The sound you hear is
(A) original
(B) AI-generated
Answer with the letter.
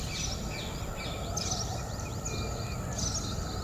A